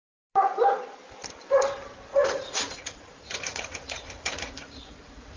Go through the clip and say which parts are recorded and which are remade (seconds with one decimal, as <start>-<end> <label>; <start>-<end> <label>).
0.0-2.1 recorded; 2.1-5.4 remade